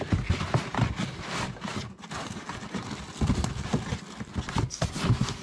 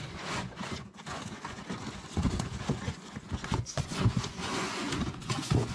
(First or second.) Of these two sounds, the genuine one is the first